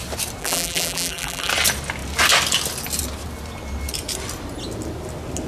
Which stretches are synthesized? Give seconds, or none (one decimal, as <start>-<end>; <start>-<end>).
0.4-1.5